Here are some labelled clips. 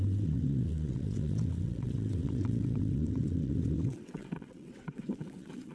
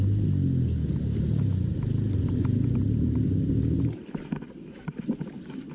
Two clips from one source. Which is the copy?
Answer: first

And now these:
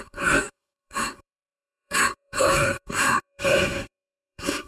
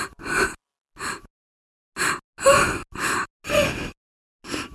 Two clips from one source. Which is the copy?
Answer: first